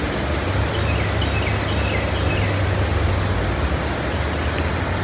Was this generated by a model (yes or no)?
no